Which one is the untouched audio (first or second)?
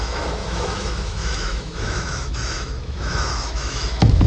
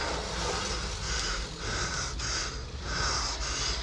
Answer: second